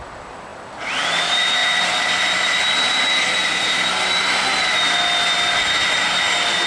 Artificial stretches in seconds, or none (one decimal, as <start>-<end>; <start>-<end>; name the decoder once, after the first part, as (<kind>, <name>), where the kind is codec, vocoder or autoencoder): none